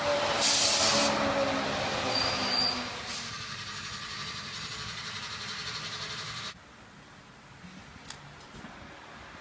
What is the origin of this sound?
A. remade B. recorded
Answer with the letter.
B